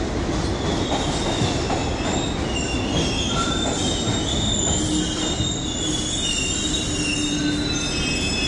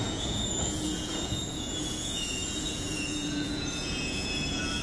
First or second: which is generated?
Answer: second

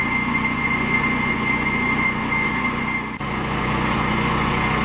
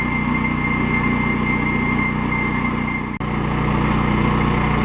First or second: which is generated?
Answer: first